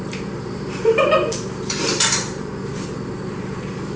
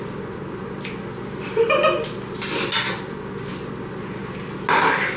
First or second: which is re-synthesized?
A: first